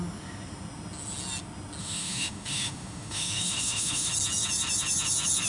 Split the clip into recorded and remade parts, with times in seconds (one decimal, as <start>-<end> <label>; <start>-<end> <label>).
0.0-1.8 recorded; 1.8-4.1 remade; 4.1-5.5 recorded